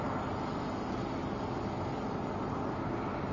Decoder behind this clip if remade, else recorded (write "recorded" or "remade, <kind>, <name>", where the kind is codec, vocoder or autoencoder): recorded